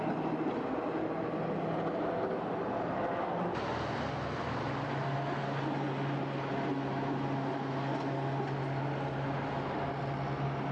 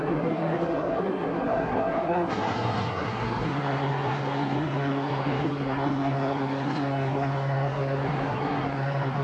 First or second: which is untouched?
first